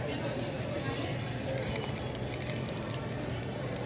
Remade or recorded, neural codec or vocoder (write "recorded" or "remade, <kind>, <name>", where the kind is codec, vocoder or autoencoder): remade, vocoder, BigVGAN v2